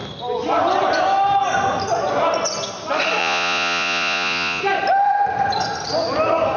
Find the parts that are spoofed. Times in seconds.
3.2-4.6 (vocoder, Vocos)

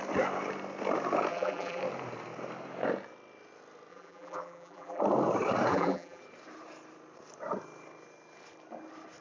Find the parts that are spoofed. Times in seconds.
1.3-1.8 (vocoder, BigVGAN v2); 3.9-5.0; 5.7-6.2

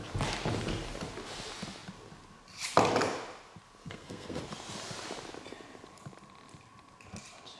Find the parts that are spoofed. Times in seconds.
3.8-4.4 (codec, SNAC)

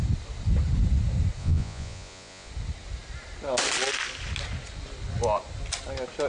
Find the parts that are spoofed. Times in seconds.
1.4-2.5 (vocoder, Vocos)